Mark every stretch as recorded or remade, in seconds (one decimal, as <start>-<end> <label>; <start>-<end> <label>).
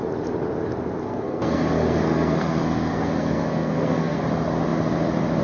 0.0-1.0 recorded; 1.0-4.2 remade; 4.2-5.4 recorded